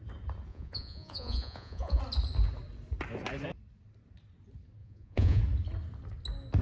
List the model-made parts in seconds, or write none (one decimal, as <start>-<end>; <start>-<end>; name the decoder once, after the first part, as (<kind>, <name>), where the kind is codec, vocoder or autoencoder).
0.5-2.0 (vocoder, Vocos); 4.8-5.4